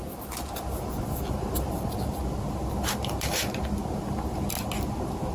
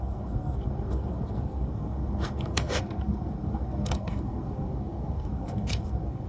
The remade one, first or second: second